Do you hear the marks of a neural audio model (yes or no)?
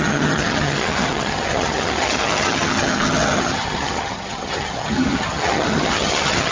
yes